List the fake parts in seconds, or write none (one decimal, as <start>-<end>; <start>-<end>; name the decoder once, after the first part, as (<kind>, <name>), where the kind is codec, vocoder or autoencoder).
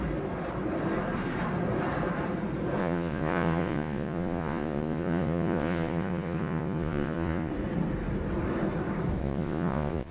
2.8-7.5 (vocoder, Vocos); 9.2-10.1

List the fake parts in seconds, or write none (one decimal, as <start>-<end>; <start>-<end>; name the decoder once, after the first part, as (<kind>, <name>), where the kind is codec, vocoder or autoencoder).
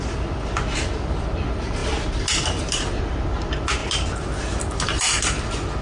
none